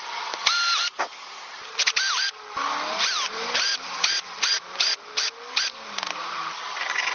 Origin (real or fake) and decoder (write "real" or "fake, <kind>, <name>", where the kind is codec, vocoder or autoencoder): real